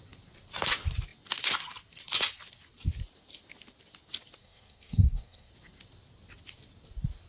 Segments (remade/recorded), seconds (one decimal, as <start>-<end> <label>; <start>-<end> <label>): 0.0-4.4 recorded; 4.4-5.5 remade; 5.5-7.3 recorded